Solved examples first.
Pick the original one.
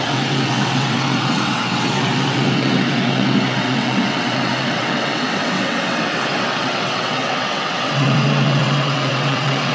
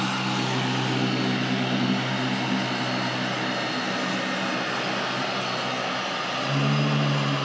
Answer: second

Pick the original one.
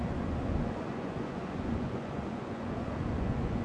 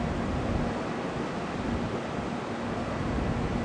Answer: second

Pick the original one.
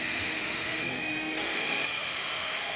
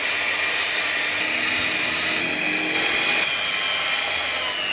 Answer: second